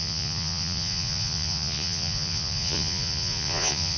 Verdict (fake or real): fake